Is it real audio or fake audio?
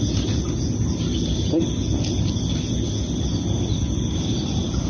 real